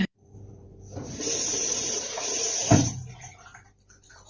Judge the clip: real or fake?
fake